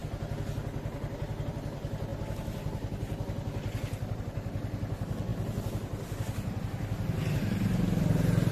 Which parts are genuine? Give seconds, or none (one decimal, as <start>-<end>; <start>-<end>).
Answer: 0.0-8.5

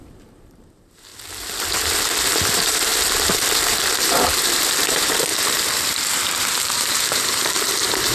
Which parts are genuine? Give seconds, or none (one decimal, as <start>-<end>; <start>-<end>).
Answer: 1.1-2.5; 5.3-6.1

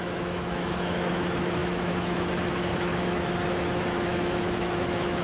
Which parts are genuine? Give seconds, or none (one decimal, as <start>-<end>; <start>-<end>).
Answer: none

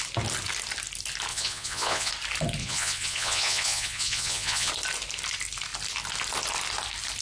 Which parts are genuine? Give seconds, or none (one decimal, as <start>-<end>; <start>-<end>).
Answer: 0.0-1.3; 2.1-2.6; 4.7-7.2